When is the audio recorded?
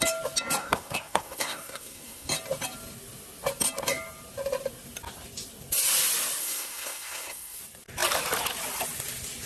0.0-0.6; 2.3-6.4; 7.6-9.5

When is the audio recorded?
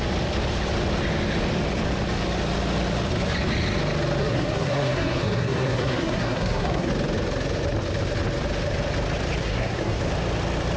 0.0-4.2; 6.9-9.4; 10.0-10.8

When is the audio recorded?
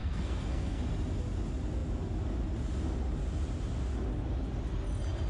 0.8-5.3